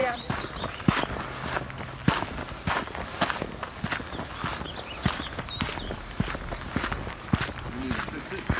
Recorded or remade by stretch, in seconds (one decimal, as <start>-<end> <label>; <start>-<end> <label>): 0.0-8.6 recorded